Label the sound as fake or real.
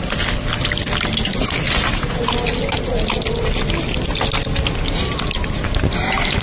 real